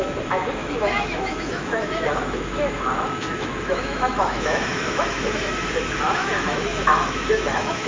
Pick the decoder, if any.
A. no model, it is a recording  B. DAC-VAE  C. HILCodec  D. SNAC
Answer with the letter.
B